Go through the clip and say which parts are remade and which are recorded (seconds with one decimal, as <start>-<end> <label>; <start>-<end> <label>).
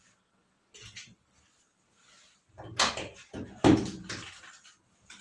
0.0-5.2 recorded